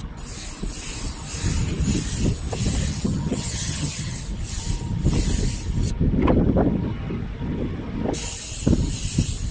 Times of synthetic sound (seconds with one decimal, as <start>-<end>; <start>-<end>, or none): 2.9-4.2